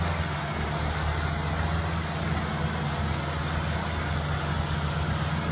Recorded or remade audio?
recorded